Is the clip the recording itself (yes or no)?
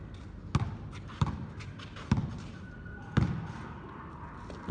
yes